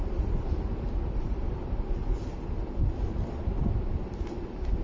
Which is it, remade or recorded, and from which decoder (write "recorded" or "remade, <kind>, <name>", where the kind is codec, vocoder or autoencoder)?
recorded